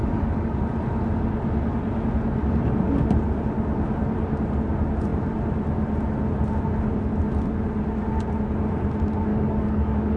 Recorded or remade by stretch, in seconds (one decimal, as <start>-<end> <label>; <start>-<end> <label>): 0.0-0.6 remade; 0.6-9.3 recorded; 9.3-10.2 remade